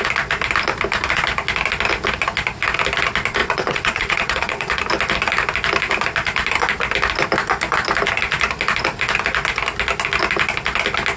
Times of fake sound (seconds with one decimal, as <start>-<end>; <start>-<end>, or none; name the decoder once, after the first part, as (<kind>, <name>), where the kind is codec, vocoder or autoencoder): 3.4-4.8 (vocoder, WaveNeXt)